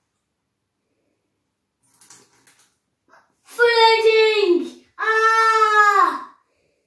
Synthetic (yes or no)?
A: no